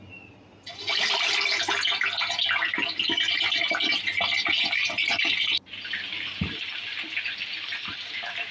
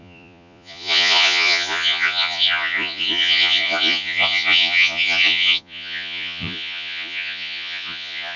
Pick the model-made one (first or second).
second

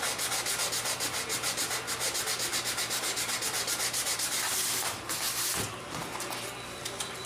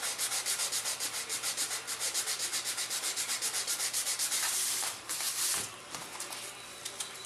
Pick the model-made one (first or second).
second